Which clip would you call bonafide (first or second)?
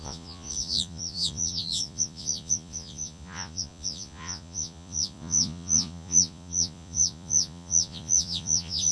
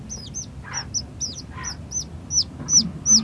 second